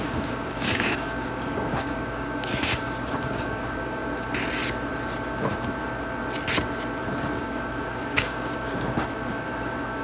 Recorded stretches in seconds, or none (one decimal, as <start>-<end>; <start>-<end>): 4.0-7.4